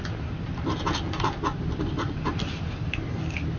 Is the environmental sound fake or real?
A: real